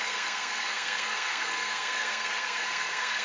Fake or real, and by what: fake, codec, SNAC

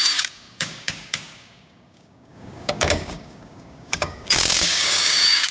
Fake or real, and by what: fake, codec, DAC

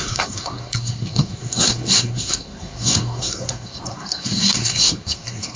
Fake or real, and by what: fake, codec, SNAC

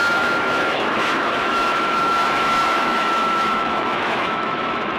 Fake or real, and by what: fake, autoencoder, DAC-VAE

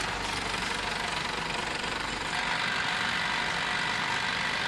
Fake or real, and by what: real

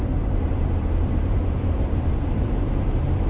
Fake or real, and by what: fake, vocoder, BigVGAN v2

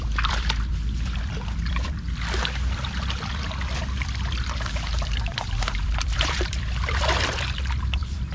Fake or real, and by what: fake, vocoder, BigVGAN v2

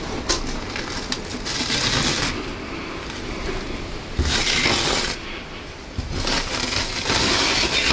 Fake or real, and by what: real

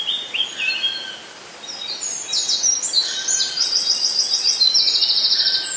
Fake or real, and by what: real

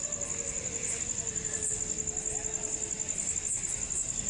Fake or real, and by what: real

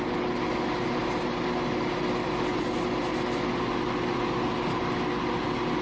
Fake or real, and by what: real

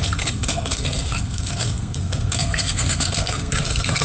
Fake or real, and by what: fake, codec, SNAC